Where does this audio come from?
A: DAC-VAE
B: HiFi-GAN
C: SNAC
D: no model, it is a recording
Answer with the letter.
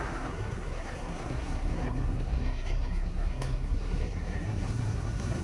C